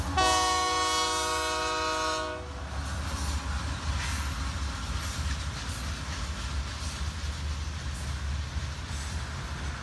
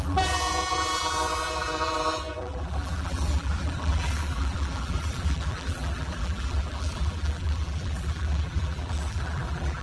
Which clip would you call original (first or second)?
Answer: first